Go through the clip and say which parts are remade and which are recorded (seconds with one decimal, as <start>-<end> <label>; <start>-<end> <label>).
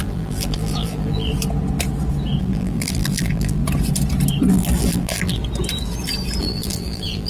0.0-1.3 remade; 1.3-2.4 recorded; 2.4-3.6 remade; 3.6-4.5 recorded; 4.5-5.4 remade; 5.4-6.4 recorded; 6.4-7.3 remade